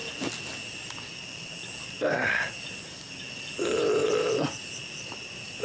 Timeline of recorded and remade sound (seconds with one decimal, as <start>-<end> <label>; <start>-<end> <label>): 0.0-5.6 recorded